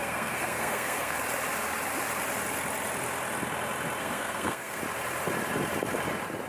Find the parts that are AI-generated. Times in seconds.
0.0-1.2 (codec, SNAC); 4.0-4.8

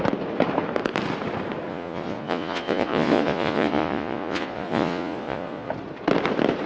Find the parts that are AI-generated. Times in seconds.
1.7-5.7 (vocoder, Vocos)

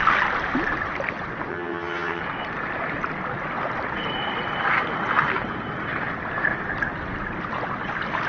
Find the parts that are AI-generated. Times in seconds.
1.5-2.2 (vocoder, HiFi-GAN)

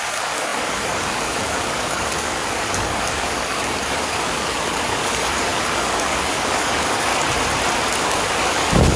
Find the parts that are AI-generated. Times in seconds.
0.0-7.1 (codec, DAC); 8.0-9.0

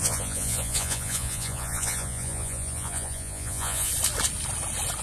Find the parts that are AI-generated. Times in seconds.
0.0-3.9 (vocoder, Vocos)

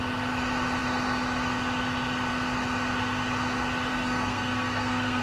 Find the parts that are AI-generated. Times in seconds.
3.9-5.2 (codec, SNAC)